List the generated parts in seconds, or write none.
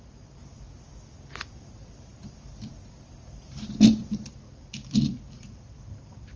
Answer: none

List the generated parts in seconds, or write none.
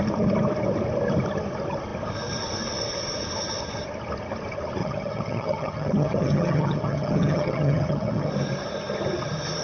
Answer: 4.8-8.3 (vocoder, HiFi-GAN)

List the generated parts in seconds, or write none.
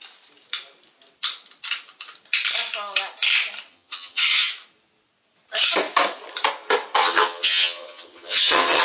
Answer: 3.7-4.5 (vocoder, HiFi-GAN); 7.0-8.8